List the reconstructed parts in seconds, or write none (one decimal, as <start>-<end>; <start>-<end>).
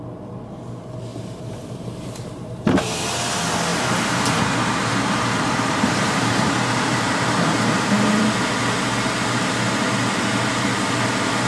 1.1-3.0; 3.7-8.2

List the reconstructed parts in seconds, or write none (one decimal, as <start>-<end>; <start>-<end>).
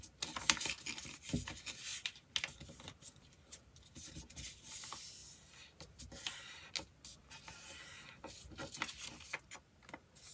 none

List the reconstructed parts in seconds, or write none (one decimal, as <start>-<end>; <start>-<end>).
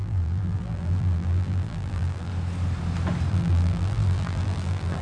0.0-2.3; 3.3-5.0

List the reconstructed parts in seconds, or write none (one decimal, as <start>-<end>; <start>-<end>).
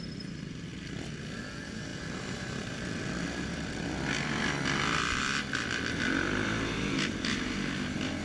1.9-3.9; 4.9-6.5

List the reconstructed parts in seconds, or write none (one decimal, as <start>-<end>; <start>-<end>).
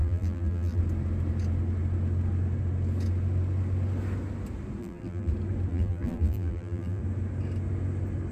0.0-0.8; 4.8-5.3; 5.7-7.0